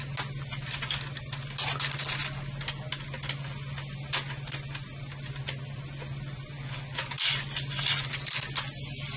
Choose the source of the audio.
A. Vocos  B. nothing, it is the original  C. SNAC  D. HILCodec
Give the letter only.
B